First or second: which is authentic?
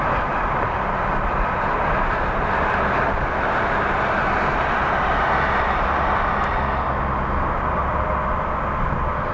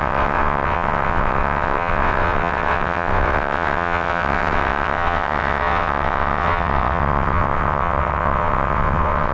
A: first